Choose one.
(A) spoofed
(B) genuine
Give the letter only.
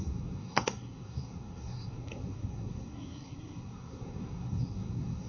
A